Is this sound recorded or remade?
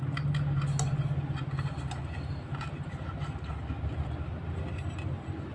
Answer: recorded